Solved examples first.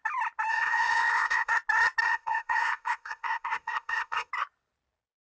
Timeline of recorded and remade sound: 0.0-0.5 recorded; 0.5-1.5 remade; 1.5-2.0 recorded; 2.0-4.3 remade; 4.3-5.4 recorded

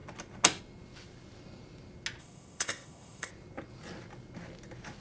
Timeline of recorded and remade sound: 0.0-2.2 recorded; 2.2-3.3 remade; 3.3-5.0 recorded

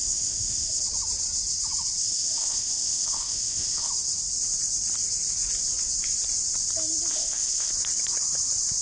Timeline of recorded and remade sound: 0.0-0.8 remade; 0.8-2.0 recorded; 2.0-3.9 remade; 3.9-7.1 recorded; 7.1-7.7 remade; 7.7-8.8 recorded